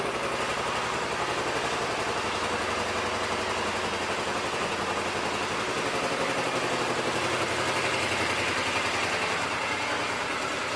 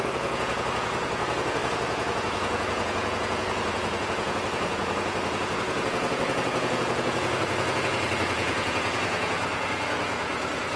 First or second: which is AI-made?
second